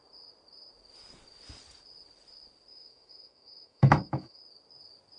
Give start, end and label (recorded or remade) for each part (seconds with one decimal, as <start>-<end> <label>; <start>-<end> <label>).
0.0-2.7 recorded; 2.7-4.4 remade; 4.4-5.2 recorded